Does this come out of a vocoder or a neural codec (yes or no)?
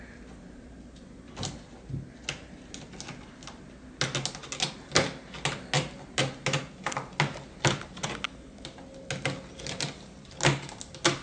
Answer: no